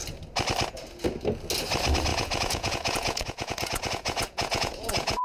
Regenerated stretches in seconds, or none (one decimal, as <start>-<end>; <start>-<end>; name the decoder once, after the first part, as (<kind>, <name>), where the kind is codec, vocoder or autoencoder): 2.1-5.2 (vocoder, Vocos)